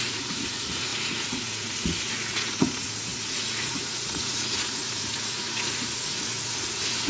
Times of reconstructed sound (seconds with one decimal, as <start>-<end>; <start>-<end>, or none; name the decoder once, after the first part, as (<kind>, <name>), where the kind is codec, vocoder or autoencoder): 0.0-7.1 (vocoder, Vocos)